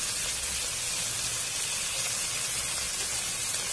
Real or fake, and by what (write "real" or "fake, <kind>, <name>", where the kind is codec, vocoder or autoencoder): real